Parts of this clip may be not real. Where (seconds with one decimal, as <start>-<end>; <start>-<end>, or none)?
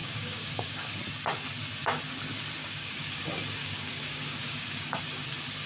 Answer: 0.0-1.0; 2.6-3.2; 3.6-5.0